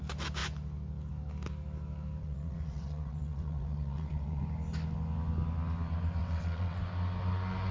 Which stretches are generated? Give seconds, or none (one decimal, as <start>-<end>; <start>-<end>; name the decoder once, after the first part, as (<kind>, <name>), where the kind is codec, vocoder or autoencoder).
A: 2.2-4.4 (vocoder, WaveNeXt); 6.2-6.8